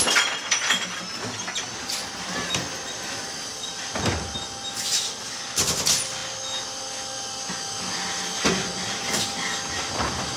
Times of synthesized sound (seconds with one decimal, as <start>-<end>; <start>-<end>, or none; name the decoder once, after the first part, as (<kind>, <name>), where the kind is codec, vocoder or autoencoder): none